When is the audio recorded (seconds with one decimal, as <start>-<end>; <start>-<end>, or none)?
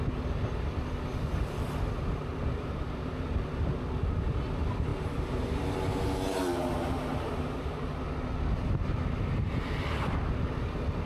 0.0-2.3; 3.7-7.1; 7.9-11.1